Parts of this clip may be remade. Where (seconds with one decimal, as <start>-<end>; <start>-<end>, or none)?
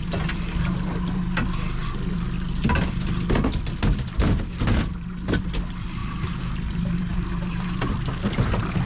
none